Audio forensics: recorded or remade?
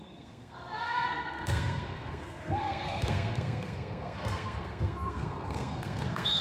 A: remade